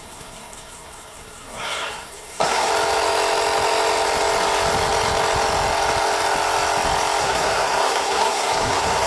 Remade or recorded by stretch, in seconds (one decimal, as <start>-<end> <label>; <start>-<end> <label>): 0.0-2.7 remade; 2.7-7.2 recorded; 7.2-9.1 remade